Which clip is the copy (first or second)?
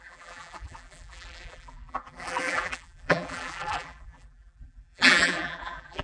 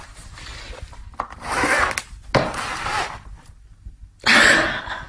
first